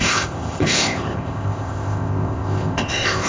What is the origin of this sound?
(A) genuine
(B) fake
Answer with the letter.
B